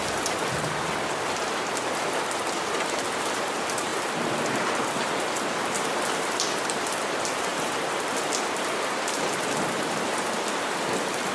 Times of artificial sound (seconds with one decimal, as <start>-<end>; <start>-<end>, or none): 3.9-6.9; 7.5-11.3